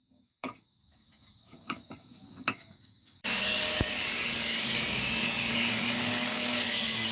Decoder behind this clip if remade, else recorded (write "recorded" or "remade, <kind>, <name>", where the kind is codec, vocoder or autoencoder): remade, codec, DAC